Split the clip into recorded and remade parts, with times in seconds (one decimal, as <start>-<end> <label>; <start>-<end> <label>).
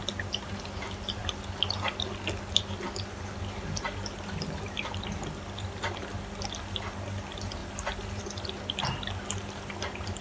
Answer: 0.0-10.2 recorded